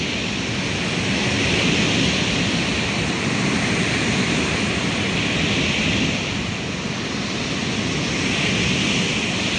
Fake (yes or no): no